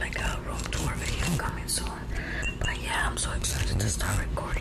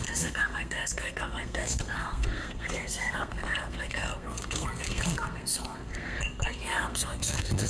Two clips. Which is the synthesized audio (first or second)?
second